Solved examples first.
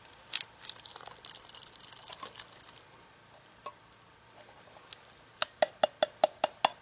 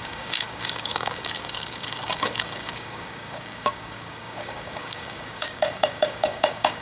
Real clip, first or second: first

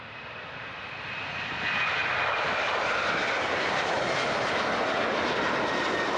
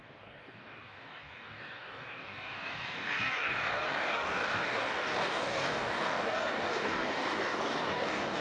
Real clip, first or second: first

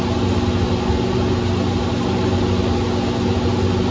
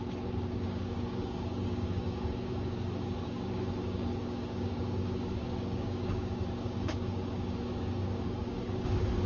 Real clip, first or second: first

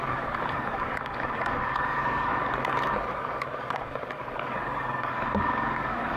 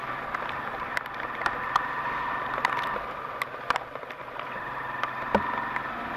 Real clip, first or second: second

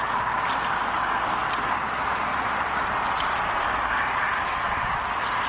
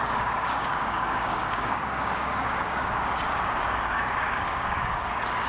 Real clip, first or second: first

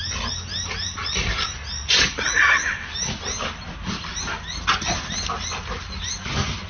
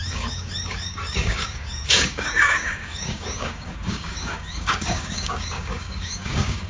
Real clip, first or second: first